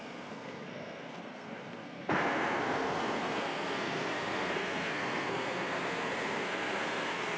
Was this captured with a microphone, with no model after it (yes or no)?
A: no